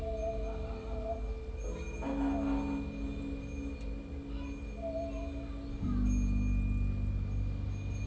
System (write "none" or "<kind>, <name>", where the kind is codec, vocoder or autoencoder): none